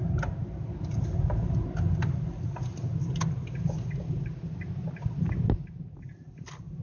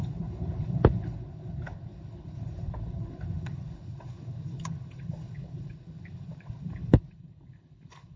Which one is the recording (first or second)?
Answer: first